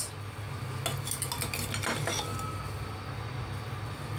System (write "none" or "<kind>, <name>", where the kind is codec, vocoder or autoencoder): none